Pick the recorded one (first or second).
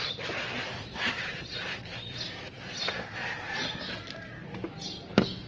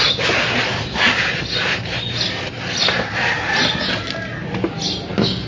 second